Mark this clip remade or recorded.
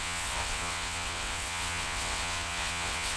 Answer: remade